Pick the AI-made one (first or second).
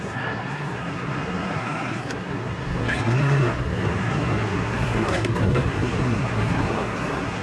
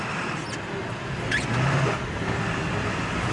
first